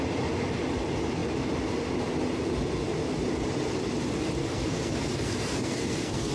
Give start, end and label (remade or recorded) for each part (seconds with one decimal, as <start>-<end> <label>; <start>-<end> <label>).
0.0-4.4 recorded; 4.4-6.3 remade